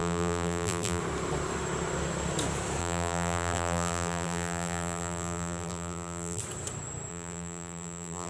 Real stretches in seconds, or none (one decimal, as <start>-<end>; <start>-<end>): 1.0-2.8; 6.4-7.1